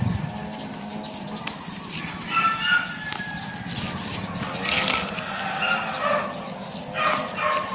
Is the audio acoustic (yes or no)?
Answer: yes